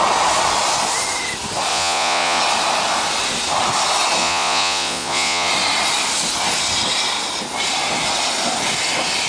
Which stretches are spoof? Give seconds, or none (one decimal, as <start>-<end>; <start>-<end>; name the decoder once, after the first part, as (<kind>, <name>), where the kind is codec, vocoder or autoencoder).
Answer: 1.7-2.4 (vocoder, Vocos); 4.2-5.5